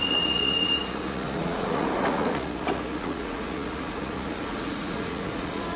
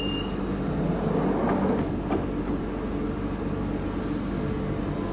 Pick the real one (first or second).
second